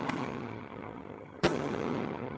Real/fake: fake